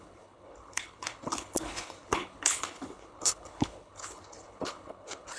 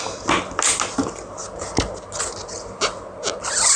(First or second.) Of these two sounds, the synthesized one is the first